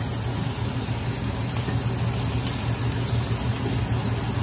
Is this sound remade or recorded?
recorded